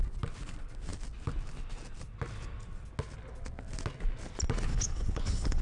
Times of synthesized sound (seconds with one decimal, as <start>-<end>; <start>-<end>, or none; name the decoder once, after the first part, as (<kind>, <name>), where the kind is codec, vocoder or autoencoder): 4.7-5.6 (codec, HILCodec)